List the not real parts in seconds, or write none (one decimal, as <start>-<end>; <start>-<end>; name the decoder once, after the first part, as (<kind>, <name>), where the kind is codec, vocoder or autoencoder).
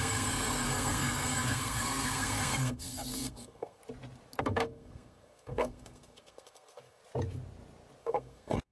0.0-3.8 (codec, SNAC); 4.4-7.0; 8.0-8.7